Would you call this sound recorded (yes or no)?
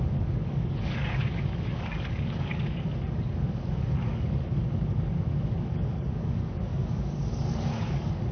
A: no